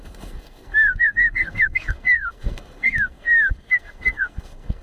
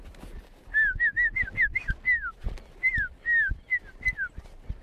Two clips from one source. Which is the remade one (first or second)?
first